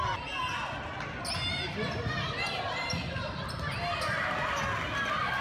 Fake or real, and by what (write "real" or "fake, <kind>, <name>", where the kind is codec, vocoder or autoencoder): real